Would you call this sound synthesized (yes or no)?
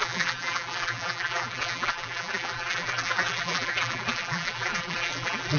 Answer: yes